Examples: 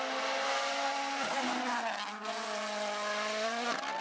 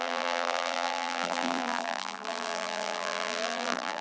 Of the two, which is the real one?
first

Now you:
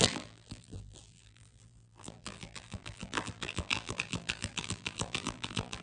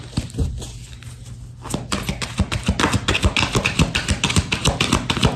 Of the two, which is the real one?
second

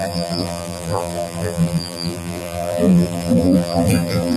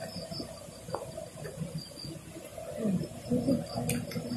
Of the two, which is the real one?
second